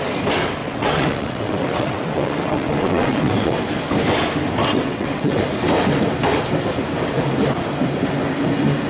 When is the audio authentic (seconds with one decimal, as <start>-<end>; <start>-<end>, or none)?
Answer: 0.0-0.6; 3.6-4.6; 5.4-8.9